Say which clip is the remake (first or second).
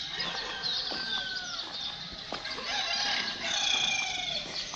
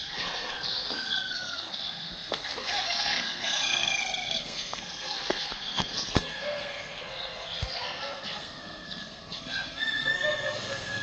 second